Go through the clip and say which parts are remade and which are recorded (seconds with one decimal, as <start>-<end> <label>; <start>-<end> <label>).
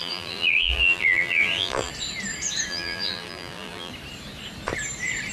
0.0-1.9 remade; 1.9-2.7 recorded; 2.7-3.9 remade; 3.9-5.3 recorded